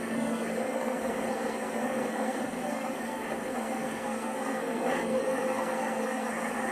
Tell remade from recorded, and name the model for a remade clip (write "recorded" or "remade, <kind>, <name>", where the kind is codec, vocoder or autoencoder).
remade, codec, SNAC